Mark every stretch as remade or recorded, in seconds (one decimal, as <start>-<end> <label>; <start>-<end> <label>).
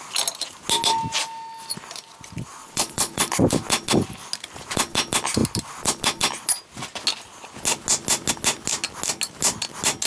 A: 0.0-2.6 recorded; 2.6-3.4 remade; 3.4-10.1 recorded